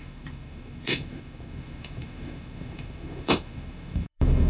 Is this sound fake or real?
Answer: fake